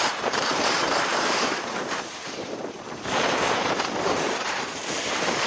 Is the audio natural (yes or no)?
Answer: no